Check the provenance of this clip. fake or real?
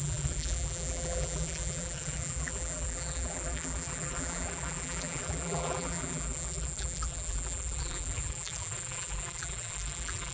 fake